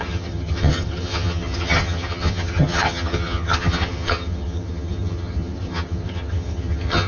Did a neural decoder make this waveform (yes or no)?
yes